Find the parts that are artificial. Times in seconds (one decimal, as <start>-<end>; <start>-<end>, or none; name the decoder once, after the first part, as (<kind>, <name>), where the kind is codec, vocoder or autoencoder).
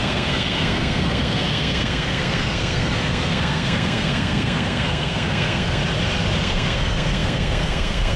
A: 0.0-5.8 (codec, SNAC); 6.4-8.2